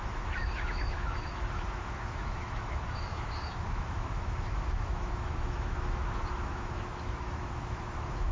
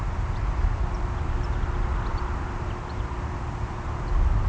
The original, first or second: second